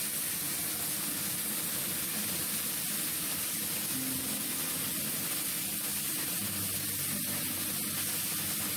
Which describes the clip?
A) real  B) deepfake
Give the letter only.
A